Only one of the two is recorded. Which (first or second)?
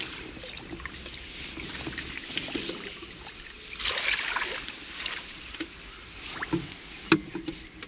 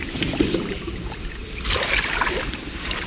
first